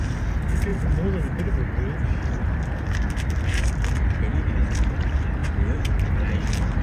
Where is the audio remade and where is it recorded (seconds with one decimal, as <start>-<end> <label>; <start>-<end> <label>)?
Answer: 0.0-6.8 recorded